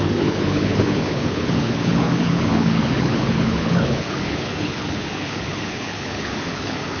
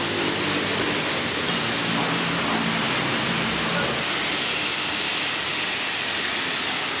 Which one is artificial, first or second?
first